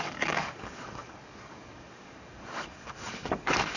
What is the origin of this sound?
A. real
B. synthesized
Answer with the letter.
B